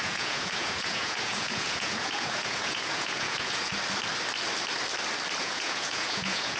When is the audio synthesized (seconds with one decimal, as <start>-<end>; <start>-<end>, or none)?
0.0-3.7; 5.4-6.6